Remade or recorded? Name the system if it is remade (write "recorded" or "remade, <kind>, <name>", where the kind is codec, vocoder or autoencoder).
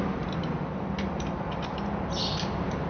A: recorded